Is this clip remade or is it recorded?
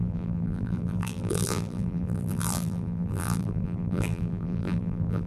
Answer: remade